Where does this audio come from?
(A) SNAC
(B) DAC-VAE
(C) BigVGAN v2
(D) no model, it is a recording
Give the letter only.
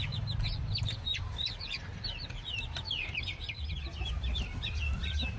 C